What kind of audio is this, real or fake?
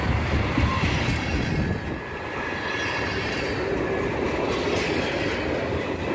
real